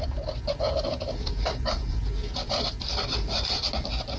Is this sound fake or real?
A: real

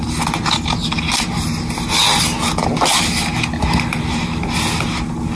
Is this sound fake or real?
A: real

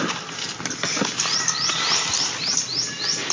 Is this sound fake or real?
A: real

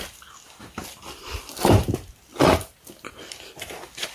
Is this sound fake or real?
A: real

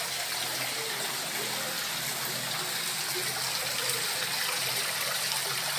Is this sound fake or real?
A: real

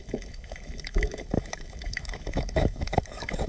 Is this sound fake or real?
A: fake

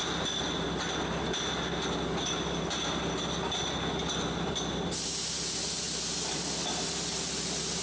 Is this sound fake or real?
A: real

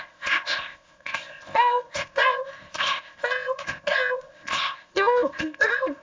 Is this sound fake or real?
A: fake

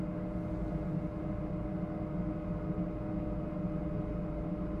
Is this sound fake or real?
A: real